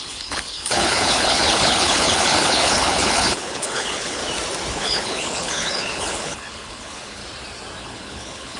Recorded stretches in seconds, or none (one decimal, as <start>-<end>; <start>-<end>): 4.2-4.7; 7.2-7.8